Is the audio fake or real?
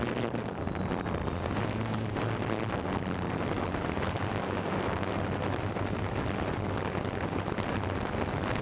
real